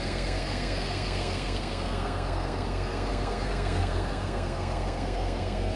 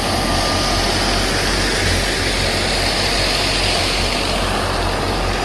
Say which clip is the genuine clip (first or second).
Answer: second